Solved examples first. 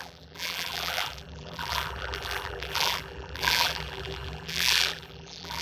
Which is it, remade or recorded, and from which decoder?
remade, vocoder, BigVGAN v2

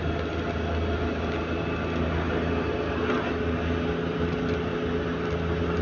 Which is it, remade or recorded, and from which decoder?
recorded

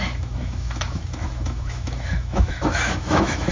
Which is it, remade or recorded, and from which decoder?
remade, autoencoder, DAC-VAE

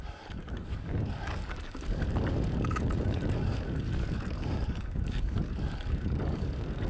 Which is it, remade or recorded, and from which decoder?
remade, codec, DAC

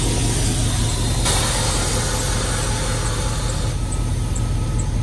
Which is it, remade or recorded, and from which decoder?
recorded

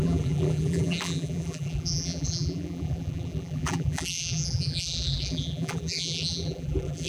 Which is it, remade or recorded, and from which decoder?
remade, vocoder, BigVGAN v2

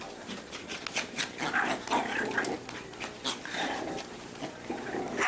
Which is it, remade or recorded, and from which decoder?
recorded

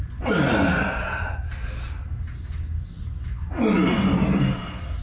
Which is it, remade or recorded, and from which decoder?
recorded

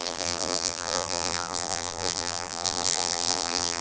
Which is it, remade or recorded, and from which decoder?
remade, vocoder, BigVGAN v2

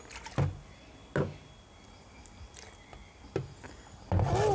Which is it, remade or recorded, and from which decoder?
recorded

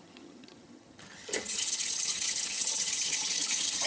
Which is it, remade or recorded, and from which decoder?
remade, vocoder, HiFi-GAN